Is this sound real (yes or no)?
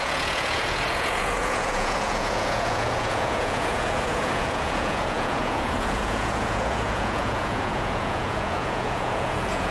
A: no